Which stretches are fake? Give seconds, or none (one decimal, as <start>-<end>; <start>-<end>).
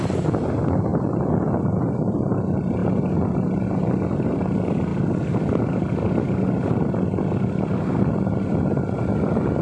none